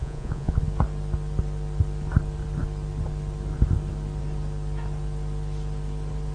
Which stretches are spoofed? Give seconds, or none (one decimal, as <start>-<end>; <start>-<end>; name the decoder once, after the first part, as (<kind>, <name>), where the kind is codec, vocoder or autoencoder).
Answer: 0.0-0.6 (vocoder, Vocos)